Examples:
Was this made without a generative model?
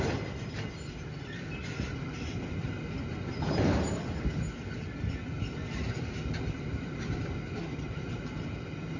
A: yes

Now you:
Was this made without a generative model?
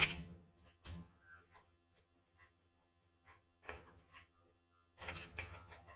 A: no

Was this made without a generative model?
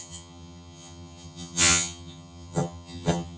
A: no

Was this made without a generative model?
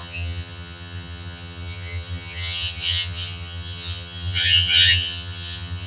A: no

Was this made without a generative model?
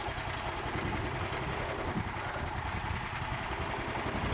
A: yes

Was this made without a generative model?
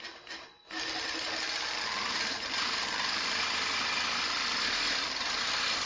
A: yes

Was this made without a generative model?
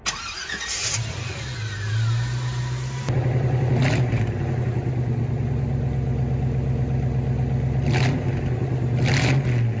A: yes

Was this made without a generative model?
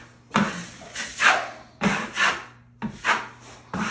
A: yes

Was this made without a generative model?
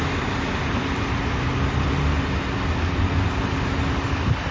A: yes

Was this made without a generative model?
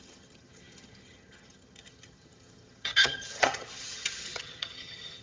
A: no